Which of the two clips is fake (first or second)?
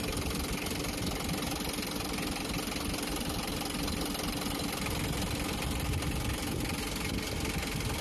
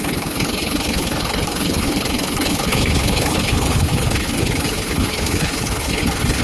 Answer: second